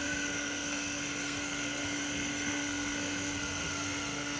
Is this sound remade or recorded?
remade